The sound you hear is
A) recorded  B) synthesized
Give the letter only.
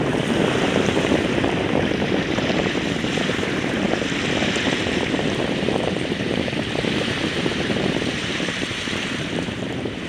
B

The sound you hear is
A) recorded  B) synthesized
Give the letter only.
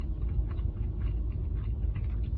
A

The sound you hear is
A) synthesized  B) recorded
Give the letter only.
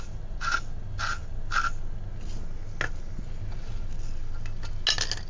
B